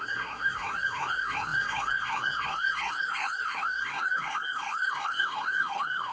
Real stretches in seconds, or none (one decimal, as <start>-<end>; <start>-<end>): none